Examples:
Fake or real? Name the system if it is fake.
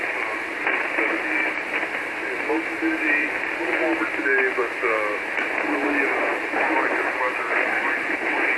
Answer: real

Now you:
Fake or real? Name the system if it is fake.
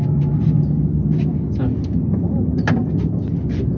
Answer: real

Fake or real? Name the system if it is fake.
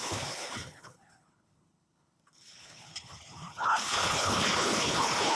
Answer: fake, codec, HILCodec